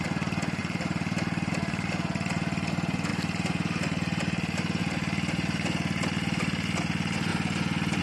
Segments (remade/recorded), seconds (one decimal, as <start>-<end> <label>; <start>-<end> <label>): 0.0-0.6 recorded; 0.6-1.5 remade; 1.5-3.1 recorded; 3.1-4.8 remade; 4.8-8.0 recorded